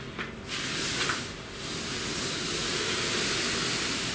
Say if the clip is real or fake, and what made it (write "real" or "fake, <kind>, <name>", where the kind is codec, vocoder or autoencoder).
real